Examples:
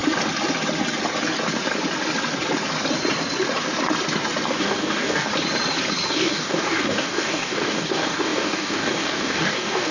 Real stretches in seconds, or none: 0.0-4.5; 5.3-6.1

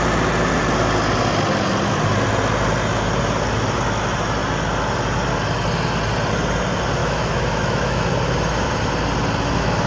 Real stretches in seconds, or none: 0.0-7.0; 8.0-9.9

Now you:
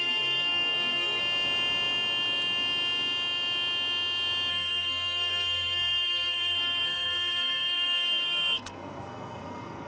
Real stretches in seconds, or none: 1.2-4.5